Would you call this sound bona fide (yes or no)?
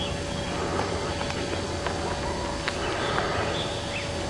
yes